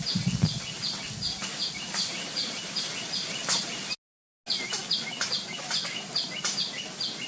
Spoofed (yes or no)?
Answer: no